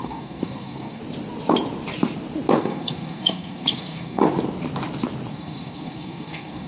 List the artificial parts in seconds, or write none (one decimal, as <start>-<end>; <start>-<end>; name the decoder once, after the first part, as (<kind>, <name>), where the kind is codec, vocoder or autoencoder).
0.0-1.0 (codec, SNAC); 2.6-4.2; 5.3-6.7